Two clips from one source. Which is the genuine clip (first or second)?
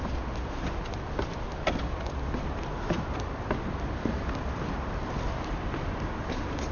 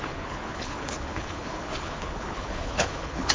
first